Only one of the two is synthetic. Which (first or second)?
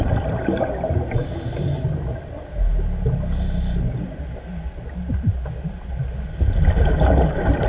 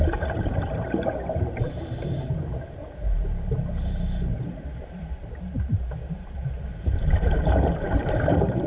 second